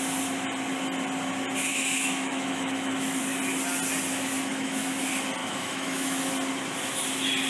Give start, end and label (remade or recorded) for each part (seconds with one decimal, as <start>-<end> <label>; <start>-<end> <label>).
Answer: 0.0-1.7 recorded; 1.7-3.2 remade; 3.2-4.5 recorded; 4.5-5.0 remade; 5.0-5.4 recorded; 5.4-6.3 remade; 6.3-7.5 recorded